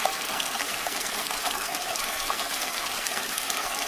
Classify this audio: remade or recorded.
remade